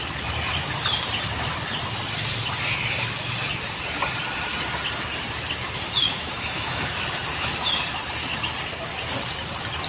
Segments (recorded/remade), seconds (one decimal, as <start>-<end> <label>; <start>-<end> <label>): 0.0-6.0 recorded; 6.0-7.0 remade; 7.0-9.9 recorded